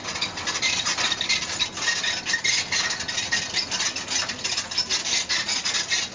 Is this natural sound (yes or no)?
yes